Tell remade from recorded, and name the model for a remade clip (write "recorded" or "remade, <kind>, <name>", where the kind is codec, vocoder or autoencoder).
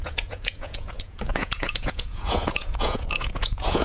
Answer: remade, vocoder, Vocos